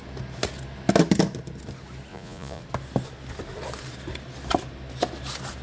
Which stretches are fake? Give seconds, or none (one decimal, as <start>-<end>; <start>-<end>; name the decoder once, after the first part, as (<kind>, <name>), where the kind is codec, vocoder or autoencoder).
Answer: 2.1-2.6 (vocoder, Vocos)